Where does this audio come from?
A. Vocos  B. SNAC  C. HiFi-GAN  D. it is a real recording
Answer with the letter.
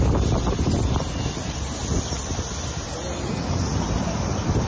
D